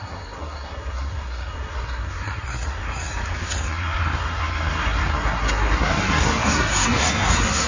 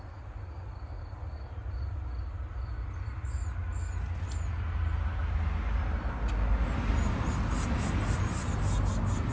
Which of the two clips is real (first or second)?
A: second